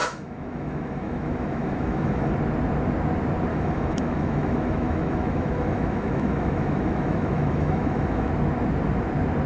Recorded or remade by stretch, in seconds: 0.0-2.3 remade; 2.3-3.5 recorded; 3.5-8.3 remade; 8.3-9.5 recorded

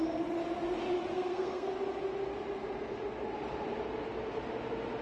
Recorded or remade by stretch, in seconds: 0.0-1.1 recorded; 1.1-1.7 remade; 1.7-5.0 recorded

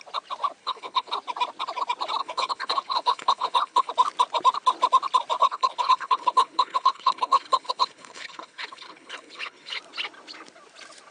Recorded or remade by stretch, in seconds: 0.0-0.6 recorded; 0.6-1.1 remade; 1.1-2.2 recorded; 2.2-3.9 remade; 3.9-5.4 recorded; 5.4-9.8 remade; 9.8-11.1 recorded